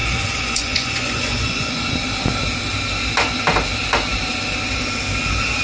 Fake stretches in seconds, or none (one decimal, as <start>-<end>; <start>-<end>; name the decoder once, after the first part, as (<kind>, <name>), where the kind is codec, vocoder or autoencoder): 0.0-1.9 (vocoder, Vocos)